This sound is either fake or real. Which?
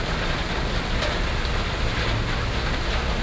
real